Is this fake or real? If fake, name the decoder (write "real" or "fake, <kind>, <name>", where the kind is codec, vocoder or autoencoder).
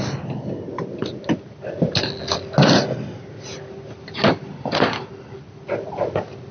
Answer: real